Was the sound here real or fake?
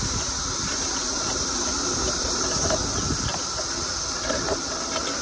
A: real